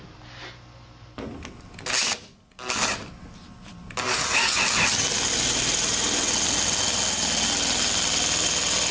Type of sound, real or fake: real